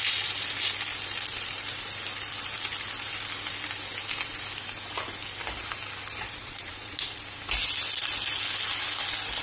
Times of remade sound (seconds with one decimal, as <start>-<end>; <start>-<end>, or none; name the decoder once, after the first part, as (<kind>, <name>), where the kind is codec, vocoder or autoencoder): 6.4-7.1 (vocoder, Vocos)